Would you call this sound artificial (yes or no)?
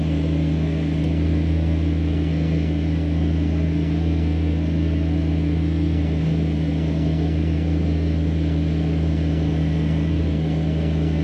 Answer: yes